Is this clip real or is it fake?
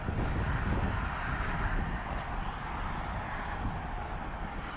real